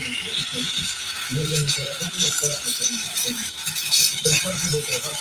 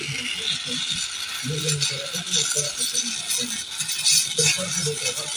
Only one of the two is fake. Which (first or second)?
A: first